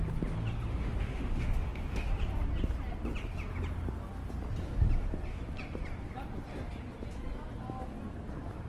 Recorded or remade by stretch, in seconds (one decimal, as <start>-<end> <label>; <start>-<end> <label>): 0.0-0.7 recorded; 0.7-2.1 remade; 2.1-8.7 recorded